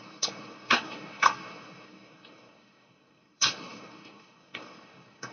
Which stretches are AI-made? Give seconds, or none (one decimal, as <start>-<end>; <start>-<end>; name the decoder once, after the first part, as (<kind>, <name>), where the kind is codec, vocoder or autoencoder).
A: 0.0-5.3 (codec, SNAC)